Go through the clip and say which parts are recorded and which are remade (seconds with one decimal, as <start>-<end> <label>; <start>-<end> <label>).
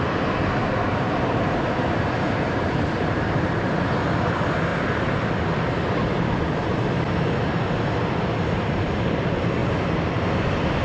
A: 0.0-0.6 recorded; 0.6-3.8 remade; 3.8-4.7 recorded; 4.7-5.3 remade; 5.3-9.6 recorded; 9.6-10.1 remade; 10.1-10.8 recorded